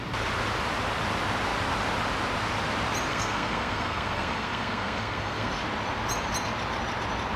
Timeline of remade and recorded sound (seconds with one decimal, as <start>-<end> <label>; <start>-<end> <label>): 0.0-3.1 recorded; 3.1-5.5 remade; 5.5-7.4 recorded

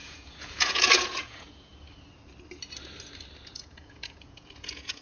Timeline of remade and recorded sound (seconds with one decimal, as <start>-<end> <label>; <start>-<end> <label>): 0.0-1.7 remade; 1.7-3.5 recorded; 3.5-5.0 remade

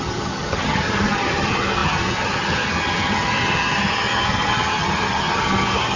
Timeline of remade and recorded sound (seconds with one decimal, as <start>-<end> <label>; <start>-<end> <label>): 0.0-6.0 remade

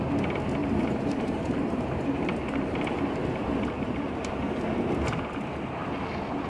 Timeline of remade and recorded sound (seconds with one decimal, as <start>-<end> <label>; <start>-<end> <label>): 0.0-0.6 recorded; 0.6-4.2 remade; 4.2-6.5 recorded

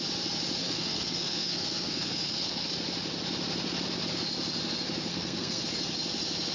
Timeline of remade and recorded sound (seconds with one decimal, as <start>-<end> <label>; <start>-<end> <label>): 0.0-0.6 recorded; 0.6-2.7 remade; 2.7-5.1 recorded; 5.1-5.6 remade; 5.6-6.5 recorded

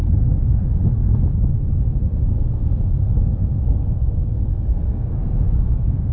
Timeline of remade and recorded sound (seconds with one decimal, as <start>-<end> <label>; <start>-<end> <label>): 0.0-0.5 remade; 0.5-2.3 recorded; 2.3-6.1 remade

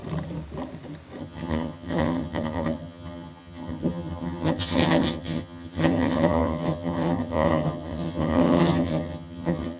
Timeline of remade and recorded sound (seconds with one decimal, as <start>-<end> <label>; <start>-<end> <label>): 0.0-1.2 recorded; 1.2-9.8 remade